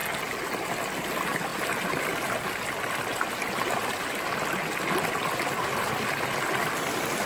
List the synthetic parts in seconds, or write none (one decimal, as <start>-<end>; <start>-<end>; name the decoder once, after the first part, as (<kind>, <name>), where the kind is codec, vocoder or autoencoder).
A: none